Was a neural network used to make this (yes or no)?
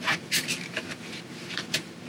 yes